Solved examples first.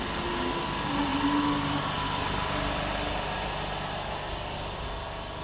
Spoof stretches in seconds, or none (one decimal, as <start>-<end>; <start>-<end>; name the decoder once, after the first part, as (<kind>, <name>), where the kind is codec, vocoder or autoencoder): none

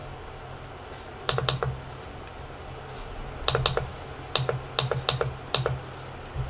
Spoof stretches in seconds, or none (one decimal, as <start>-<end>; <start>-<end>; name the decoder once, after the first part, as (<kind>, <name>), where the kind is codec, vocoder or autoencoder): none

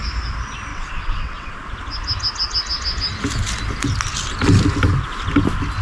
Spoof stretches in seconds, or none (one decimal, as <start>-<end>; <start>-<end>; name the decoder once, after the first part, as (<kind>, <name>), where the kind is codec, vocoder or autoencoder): 0.7-1.5 (vocoder, WaveNeXt)

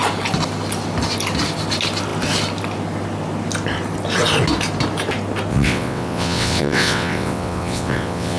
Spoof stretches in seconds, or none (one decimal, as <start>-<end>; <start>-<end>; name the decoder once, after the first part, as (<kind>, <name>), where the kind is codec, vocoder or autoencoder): 5.5-8.4 (vocoder, WaveNeXt)

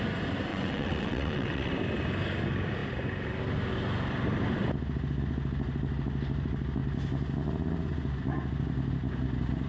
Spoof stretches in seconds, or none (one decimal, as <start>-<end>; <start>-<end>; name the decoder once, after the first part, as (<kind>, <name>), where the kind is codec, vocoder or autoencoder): 0.5-1.7 (vocoder, WaveNeXt)

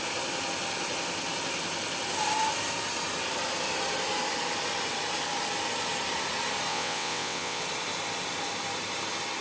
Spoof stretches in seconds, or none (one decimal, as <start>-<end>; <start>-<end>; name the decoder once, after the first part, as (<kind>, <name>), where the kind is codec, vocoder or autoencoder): 6.7-7.6 (vocoder, WaveNeXt)

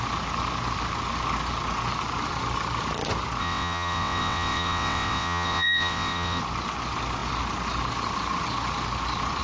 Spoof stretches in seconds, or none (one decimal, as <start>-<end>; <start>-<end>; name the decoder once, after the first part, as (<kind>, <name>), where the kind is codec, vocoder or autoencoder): 3.4-6.4 (vocoder, WaveNeXt)